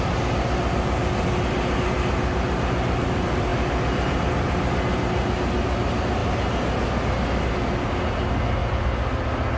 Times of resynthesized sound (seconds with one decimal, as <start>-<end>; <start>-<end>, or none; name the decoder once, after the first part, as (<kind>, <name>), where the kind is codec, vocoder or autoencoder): none